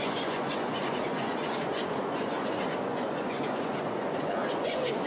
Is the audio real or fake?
fake